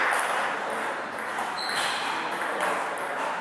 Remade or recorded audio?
recorded